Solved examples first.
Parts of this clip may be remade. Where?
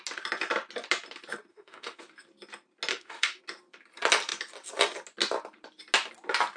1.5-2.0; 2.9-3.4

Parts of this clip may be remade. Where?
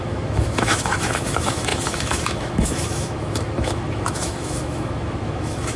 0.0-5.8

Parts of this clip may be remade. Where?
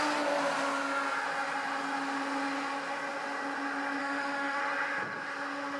4.0-4.6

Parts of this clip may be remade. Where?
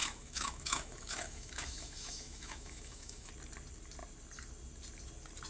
0.0-3.3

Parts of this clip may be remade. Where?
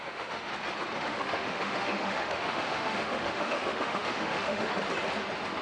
0.0-0.5; 1.0-4.7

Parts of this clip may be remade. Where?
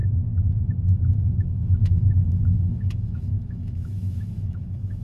0.5-5.0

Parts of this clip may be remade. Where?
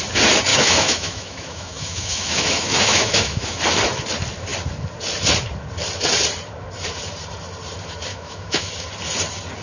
0.5-3.6; 8.1-8.7